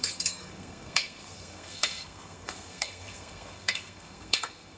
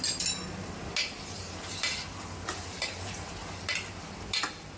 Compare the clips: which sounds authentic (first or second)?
second